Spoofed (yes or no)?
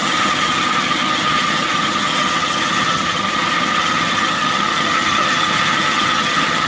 yes